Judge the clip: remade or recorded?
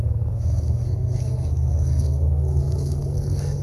remade